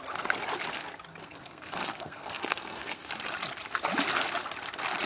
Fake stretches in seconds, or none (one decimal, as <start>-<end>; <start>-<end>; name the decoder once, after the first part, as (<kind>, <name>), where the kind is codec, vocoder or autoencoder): 1.2-3.1 (codec, SNAC)